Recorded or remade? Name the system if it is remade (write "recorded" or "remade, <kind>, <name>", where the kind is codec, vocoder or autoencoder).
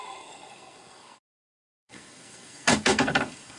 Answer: remade, codec, SNAC